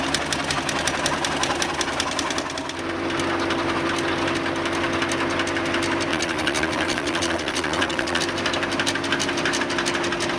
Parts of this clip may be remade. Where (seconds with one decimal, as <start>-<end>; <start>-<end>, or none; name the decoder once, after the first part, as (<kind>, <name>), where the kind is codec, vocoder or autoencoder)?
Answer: 6.1-8.2 (vocoder, WaveNeXt)